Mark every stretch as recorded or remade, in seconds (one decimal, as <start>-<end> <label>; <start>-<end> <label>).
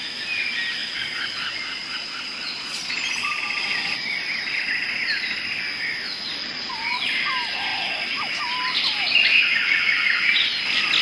0.0-0.8 recorded; 0.8-3.4 remade; 3.4-6.4 recorded; 6.4-7.3 remade; 7.3-11.0 recorded